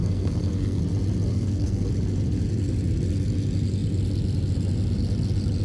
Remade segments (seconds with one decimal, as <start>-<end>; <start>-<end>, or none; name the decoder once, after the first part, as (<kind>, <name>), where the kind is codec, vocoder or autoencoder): 0.0-0.8 (codec, SNAC); 1.3-1.9

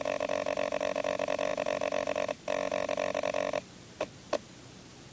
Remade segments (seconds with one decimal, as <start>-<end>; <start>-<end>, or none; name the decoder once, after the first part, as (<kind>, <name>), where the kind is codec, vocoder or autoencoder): none

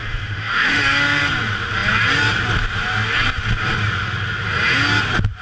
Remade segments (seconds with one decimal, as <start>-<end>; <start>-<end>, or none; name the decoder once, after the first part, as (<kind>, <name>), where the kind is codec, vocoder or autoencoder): 0.0-0.8 (autoencoder, DAC-VAE)

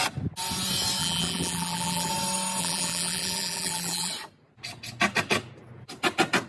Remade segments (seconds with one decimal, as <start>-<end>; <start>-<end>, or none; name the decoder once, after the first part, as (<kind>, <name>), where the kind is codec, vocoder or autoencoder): 1.0-2.1 (vocoder, BigVGAN v2); 2.6-4.1

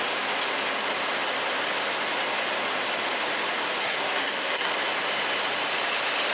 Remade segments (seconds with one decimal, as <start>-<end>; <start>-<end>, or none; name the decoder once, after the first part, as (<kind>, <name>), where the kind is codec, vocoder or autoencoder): 3.8-4.7 (codec, SNAC)

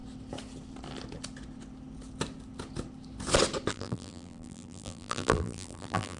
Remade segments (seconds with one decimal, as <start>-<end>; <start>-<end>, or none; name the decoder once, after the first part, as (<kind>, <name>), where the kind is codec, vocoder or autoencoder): 3.7-6.2 (vocoder, BigVGAN v2)

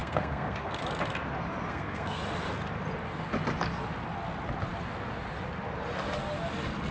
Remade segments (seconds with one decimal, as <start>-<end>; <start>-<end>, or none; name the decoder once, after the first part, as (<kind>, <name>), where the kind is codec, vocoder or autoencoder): 0.0-0.8 (codec, SNAC); 1.7-2.2